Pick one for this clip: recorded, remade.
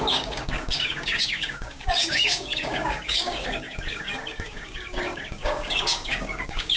remade